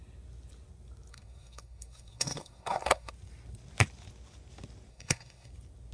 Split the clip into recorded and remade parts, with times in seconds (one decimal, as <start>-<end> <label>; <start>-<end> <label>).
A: 0.0-1.1 recorded; 1.1-3.1 remade; 3.1-4.9 recorded; 4.9-5.5 remade; 5.5-5.9 recorded